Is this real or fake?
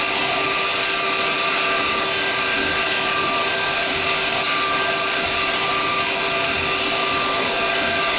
real